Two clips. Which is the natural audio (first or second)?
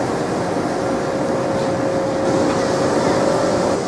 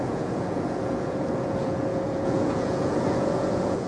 first